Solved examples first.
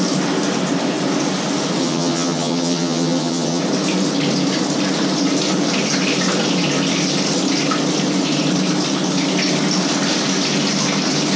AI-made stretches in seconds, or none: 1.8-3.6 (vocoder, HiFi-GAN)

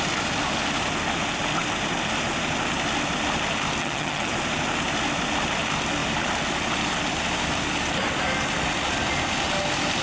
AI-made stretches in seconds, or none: 3.8-4.3 (vocoder, HiFi-GAN)

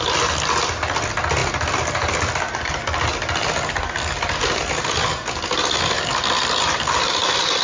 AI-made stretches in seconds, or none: none

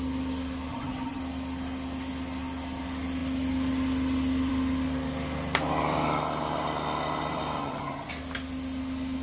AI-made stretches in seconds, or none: 0.7-1.2 (vocoder, HiFi-GAN); 7.6-8.1

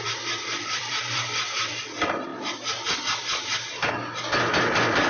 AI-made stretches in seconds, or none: none

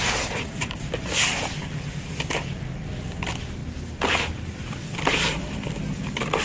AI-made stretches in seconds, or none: none

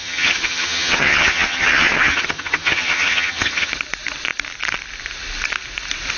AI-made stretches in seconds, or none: 0.0-3.7 (vocoder, HiFi-GAN)

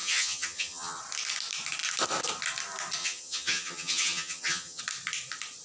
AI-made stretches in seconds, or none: 0.0-1.0 (vocoder, HiFi-GAN); 3.0-4.8